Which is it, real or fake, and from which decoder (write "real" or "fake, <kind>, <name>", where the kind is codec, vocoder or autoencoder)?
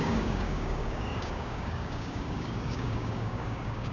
fake, codec, DAC